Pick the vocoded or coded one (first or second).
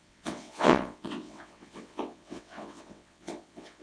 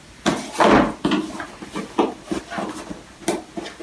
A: first